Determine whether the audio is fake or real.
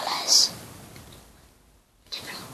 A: real